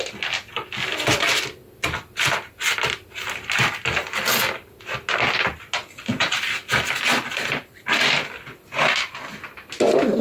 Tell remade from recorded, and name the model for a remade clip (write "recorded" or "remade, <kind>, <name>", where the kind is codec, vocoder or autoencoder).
recorded